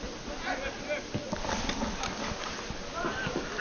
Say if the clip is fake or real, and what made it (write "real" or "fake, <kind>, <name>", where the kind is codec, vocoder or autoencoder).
real